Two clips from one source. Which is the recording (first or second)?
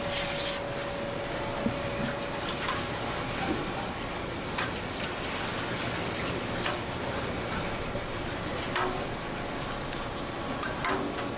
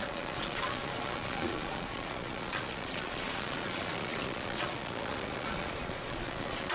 first